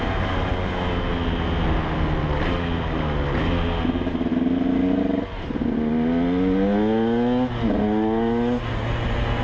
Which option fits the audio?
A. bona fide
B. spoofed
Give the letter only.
A